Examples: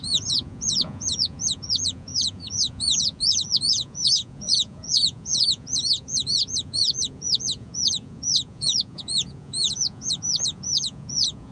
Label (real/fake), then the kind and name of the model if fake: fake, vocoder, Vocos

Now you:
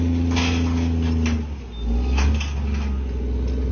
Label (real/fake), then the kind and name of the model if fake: real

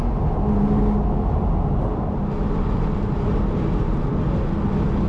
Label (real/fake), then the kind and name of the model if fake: real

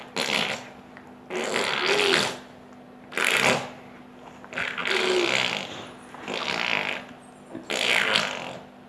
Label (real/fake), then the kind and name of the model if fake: real